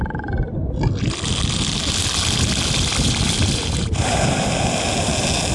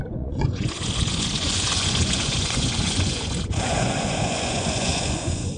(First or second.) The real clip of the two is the first